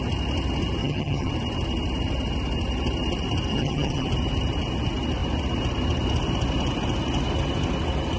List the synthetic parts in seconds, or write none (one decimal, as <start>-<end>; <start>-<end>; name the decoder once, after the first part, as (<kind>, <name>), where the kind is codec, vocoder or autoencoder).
0.8-1.3 (vocoder, HiFi-GAN); 3.5-4.1

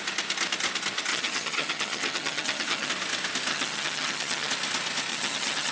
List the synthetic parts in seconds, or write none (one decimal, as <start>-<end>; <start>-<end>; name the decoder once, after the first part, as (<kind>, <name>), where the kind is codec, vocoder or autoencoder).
1.1-2.9 (vocoder, HiFi-GAN); 3.5-4.5; 5.1-5.7